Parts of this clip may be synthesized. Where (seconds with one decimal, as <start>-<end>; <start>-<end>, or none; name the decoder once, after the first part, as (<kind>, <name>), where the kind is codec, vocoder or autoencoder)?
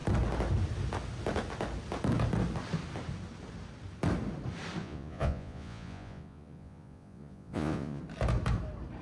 4.8-8.0 (vocoder, Vocos)